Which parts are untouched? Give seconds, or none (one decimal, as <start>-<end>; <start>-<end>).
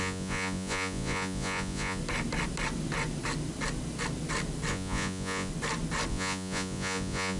2.0-4.7; 5.5-6.1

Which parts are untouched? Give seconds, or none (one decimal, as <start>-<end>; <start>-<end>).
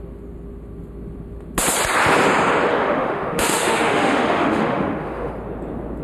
0.0-2.7; 5.3-6.0